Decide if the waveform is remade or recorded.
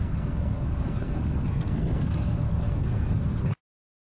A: remade